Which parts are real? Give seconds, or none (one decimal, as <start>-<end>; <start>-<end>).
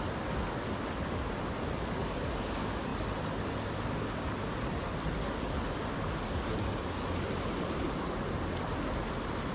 0.0-9.5